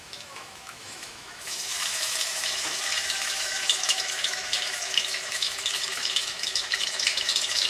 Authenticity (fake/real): fake